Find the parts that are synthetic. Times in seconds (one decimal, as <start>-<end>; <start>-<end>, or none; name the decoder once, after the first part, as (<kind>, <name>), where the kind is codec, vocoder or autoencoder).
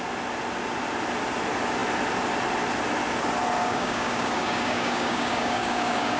3.6-6.2 (codec, DAC)